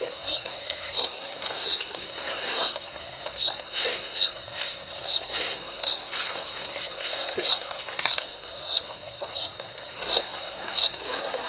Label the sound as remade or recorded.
remade